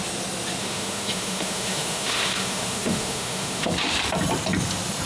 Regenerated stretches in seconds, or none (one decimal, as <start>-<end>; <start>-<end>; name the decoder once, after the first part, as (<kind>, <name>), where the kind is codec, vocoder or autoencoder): 0.6-3.7 (autoencoder, DAC-VAE)

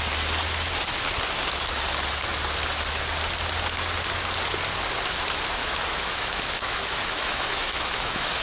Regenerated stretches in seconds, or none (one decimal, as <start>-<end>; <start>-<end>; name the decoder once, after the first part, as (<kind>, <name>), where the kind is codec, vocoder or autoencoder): 5.6-8.4 (autoencoder, DAC-VAE)

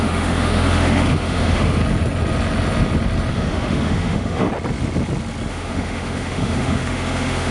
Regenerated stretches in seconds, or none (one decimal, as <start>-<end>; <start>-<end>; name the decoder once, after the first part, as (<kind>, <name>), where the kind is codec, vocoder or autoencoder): 0.0-1.8 (autoencoder, DAC-VAE); 3.3-4.5; 5.5-7.5

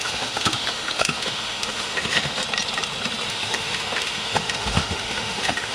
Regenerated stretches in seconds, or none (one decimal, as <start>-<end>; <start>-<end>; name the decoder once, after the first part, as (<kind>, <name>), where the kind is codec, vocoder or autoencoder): 0.0-2.4 (autoencoder, DAC-VAE); 3.3-5.7

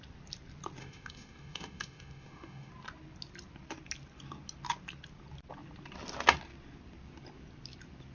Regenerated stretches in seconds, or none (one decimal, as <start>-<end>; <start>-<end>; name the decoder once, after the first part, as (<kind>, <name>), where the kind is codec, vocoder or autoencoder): 0.8-2.7 (autoencoder, DAC-VAE)

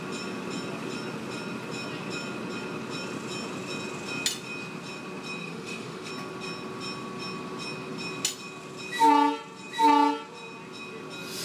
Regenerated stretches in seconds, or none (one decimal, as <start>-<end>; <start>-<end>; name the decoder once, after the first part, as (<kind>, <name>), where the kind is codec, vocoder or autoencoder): 5.4-6.1 (autoencoder, DAC-VAE)

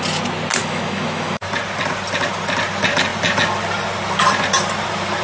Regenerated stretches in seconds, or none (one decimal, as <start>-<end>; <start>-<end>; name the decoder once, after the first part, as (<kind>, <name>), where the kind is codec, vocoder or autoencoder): 0.6-1.4 (autoencoder, DAC-VAE)